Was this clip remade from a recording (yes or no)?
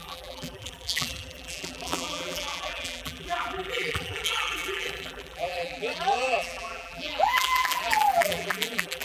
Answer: yes